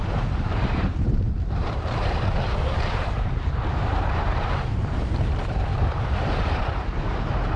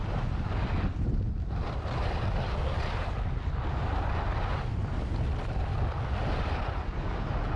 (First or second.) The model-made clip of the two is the first